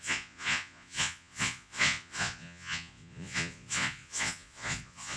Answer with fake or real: fake